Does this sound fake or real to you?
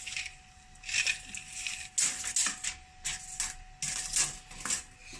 real